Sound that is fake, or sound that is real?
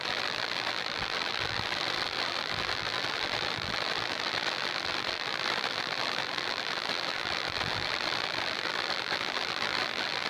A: fake